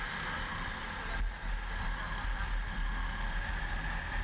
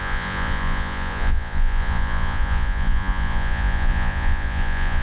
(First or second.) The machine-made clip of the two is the second